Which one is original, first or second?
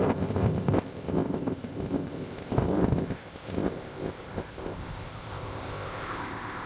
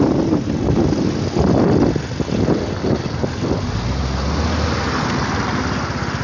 second